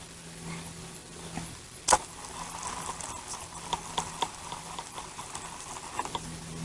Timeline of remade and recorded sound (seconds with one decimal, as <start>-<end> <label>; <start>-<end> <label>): 0.0-6.6 recorded